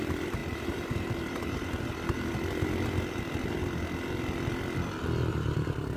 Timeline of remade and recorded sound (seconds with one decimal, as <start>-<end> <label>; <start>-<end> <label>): 0.0-0.4 recorded; 0.4-2.3 remade; 2.3-5.3 recorded; 5.3-6.0 remade